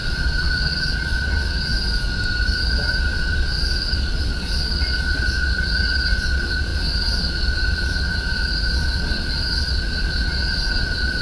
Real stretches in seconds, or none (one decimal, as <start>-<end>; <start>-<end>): 1.7-2.5